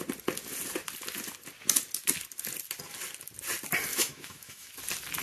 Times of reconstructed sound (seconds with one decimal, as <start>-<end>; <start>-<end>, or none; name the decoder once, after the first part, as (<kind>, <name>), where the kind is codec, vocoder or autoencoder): 3.9-4.7 (autoencoder, DAC-VAE)